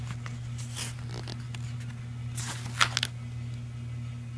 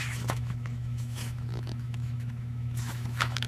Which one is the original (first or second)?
first